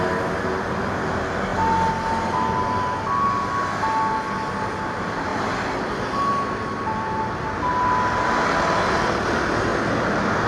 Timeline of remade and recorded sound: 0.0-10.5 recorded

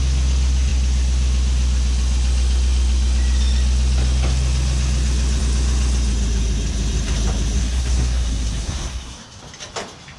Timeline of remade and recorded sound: 0.0-7.6 recorded; 7.6-9.4 remade; 9.4-10.2 recorded

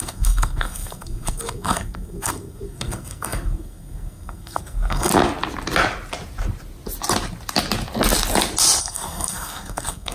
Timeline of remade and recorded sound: 0.0-5.1 remade; 5.1-8.8 recorded; 8.8-10.1 remade

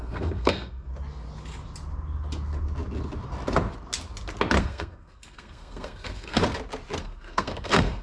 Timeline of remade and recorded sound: 0.0-0.9 remade; 0.9-4.6 recorded; 4.6-6.4 remade; 6.4-7.0 recorded; 7.0-8.0 remade

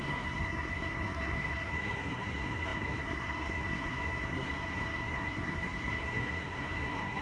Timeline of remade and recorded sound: 0.0-7.2 remade

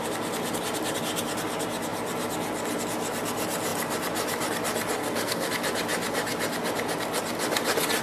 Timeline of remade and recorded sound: 0.0-5.0 recorded; 5.0-5.5 remade; 5.5-8.0 recorded

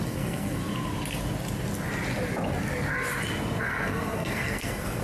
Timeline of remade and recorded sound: 0.0-0.6 remade; 0.6-3.6 recorded; 3.6-5.0 remade

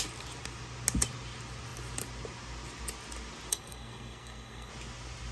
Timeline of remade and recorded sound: 0.0-3.5 recorded; 3.5-4.7 remade; 4.7-5.3 recorded